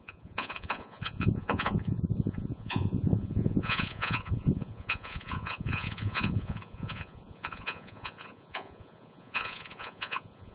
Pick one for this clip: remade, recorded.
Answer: remade